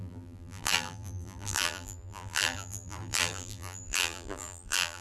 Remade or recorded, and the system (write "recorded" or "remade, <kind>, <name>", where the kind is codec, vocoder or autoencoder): remade, vocoder, BigVGAN v2